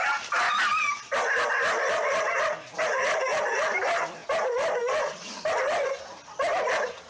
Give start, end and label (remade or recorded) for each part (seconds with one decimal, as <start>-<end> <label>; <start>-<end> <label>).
0.0-7.1 recorded